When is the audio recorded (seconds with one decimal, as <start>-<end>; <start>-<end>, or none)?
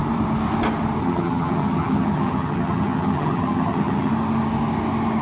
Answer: 0.0-1.0; 4.1-5.2